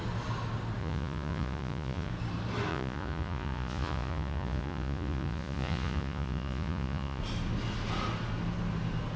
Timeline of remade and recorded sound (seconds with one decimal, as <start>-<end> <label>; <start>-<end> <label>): 0.0-0.8 recorded; 0.8-2.1 remade; 2.1-2.7 recorded; 2.7-7.2 remade; 7.2-9.2 recorded